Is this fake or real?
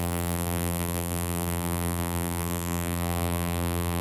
fake